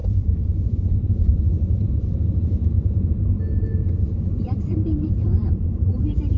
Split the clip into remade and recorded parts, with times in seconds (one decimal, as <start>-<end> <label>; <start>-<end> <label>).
0.0-6.4 remade

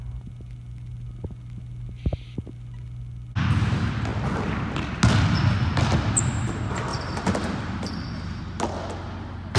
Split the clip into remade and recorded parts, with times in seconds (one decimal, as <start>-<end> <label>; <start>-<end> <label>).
0.0-6.9 recorded; 6.9-8.4 remade; 8.4-9.6 recorded

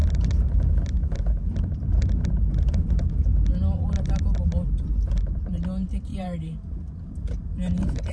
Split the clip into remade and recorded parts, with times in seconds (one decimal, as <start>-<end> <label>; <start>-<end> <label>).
0.0-6.1 recorded; 6.1-6.9 remade; 6.9-8.1 recorded

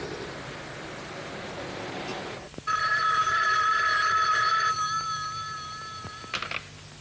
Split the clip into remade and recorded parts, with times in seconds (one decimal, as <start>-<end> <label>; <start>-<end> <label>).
0.0-2.1 recorded; 2.1-6.3 remade; 6.3-7.0 recorded

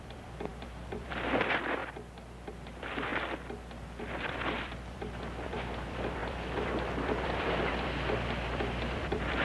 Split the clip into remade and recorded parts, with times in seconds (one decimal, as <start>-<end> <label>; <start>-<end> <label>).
0.0-1.8 remade; 1.8-2.5 recorded; 2.5-3.1 remade; 3.1-4.0 recorded; 4.0-9.4 remade

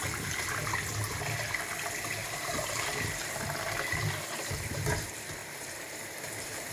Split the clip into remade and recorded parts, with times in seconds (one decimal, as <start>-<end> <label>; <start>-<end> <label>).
0.0-2.2 recorded; 2.2-2.8 remade; 2.8-5.4 recorded; 5.4-6.7 remade

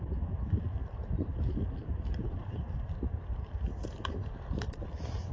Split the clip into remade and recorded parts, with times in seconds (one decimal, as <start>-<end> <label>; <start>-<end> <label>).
0.0-0.8 recorded; 0.8-1.3 remade; 1.3-1.8 recorded; 1.8-5.3 remade